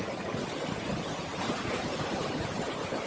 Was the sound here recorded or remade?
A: recorded